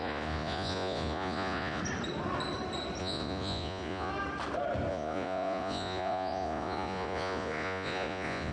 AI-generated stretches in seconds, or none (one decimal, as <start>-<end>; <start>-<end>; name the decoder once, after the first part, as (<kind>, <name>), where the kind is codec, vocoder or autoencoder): 0.0-1.8 (vocoder, Vocos); 3.0-4.1; 4.9-8.5